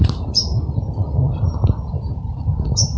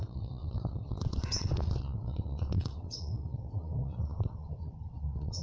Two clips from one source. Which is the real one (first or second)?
first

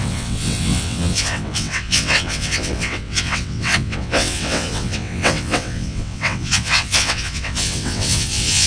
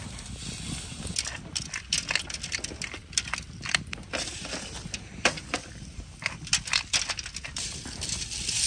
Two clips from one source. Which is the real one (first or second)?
second